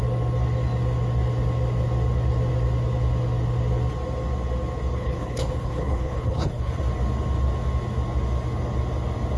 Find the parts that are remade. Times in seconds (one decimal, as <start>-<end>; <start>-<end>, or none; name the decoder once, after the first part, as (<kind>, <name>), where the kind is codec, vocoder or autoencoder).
4.9-6.8 (codec, HILCodec)